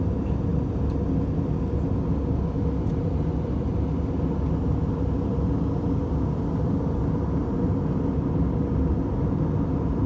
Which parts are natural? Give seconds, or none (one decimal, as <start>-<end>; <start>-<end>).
0.0-10.1